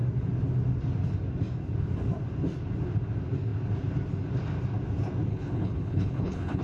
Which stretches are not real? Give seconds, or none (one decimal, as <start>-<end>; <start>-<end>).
5.3-6.6